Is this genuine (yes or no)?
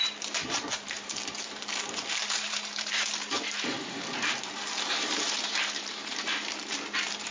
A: no